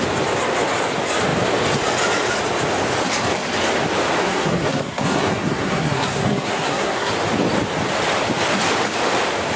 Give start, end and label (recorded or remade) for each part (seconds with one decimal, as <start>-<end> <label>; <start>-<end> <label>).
0.0-4.2 recorded; 4.2-7.1 remade; 7.1-9.6 recorded

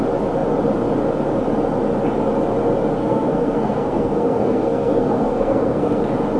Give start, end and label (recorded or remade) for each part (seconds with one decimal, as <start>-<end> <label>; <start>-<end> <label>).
0.0-3.0 recorded; 3.0-6.0 remade; 6.0-6.4 recorded

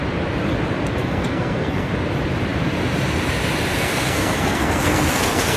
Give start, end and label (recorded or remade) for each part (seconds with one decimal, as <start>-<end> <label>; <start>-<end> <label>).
0.0-1.0 recorded; 1.0-1.9 remade; 1.9-3.7 recorded; 3.7-5.6 remade

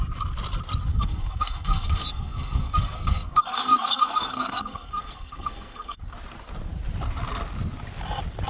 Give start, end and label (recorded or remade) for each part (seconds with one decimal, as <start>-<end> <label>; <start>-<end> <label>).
0.0-0.9 recorded; 0.9-6.0 remade; 6.0-8.5 recorded

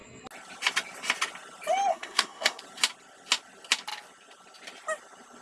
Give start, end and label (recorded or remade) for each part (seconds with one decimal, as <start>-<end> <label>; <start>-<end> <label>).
0.0-1.9 recorded; 1.9-2.6 remade; 2.6-5.4 recorded